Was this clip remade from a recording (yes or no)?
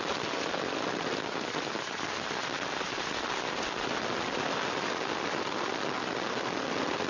no